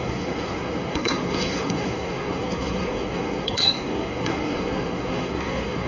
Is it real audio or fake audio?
fake